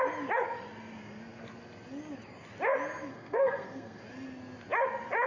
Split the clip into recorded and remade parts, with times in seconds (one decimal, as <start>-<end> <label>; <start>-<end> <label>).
0.0-3.1 recorded; 3.1-4.0 remade; 4.0-5.3 recorded